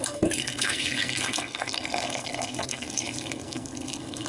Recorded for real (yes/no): no